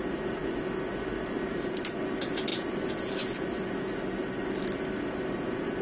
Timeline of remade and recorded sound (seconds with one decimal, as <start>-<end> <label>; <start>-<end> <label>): 0.0-5.8 recorded